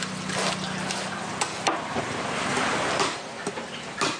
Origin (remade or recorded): recorded